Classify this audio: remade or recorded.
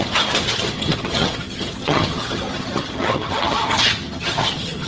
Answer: remade